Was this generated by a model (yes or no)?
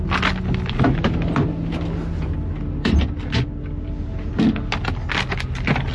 no